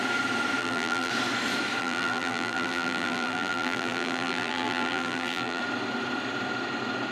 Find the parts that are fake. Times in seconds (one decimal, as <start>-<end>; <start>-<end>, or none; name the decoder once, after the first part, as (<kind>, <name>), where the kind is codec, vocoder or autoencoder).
0.6-1.1 (vocoder, BigVGAN v2); 1.8-5.6